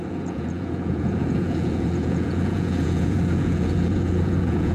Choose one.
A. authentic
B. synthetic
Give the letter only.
B